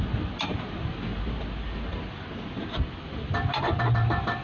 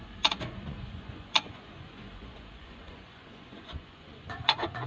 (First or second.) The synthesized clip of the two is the second